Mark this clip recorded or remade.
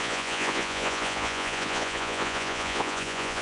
remade